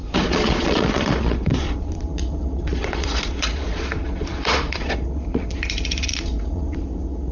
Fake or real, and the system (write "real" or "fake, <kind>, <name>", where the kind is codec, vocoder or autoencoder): fake, vocoder, Vocos